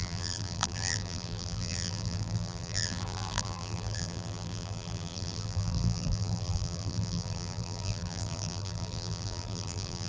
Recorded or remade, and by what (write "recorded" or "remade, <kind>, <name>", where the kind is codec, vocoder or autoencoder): remade, vocoder, BigVGAN v2